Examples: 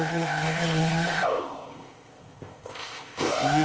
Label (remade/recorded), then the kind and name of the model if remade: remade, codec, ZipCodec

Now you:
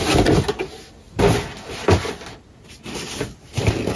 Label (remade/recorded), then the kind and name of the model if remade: recorded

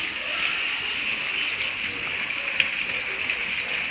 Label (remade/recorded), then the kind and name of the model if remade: recorded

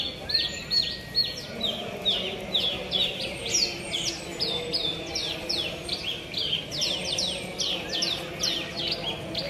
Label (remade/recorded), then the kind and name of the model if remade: recorded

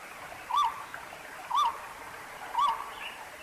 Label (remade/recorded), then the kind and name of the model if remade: remade, vocoder, BigVGAN v2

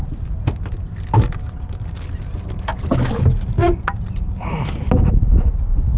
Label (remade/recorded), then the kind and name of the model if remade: recorded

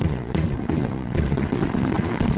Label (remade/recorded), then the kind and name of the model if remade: remade, vocoder, Vocos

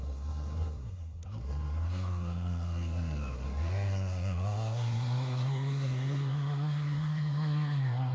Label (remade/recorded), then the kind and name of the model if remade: remade, codec, SNAC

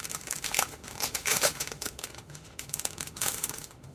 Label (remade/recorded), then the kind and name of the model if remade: remade, autoencoder, DAC-VAE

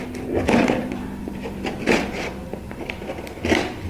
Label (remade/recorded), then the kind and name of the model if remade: remade, vocoder, BigVGAN v2